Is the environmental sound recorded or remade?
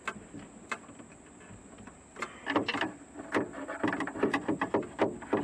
recorded